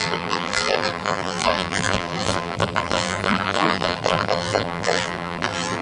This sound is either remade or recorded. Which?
remade